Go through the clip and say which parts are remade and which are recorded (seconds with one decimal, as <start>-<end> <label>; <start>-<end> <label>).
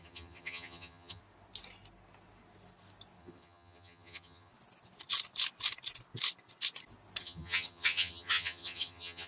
0.0-1.2 remade; 1.2-3.2 recorded; 3.2-4.5 remade; 4.5-7.2 recorded; 7.2-9.3 remade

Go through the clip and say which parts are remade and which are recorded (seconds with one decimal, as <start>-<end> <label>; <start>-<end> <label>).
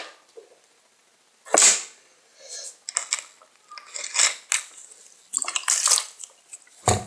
0.0-7.1 recorded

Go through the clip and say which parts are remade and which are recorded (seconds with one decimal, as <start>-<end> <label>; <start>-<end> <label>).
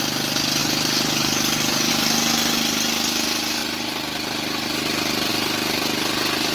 0.0-0.6 recorded; 0.6-1.9 remade; 1.9-6.5 recorded